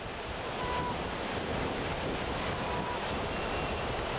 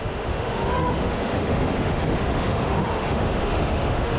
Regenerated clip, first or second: second